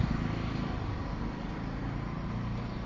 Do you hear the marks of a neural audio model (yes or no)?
no